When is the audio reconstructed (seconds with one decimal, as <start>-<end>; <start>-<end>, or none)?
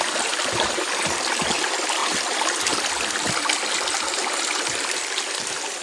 2.0-3.0